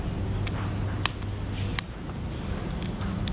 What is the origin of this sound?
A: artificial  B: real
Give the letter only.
B